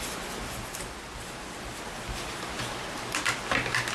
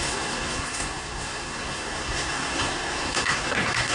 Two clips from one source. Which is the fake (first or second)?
second